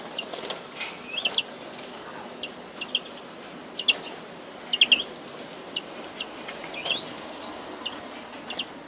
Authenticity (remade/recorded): recorded